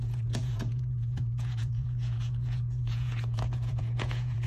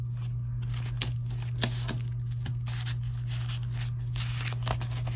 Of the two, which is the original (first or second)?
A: second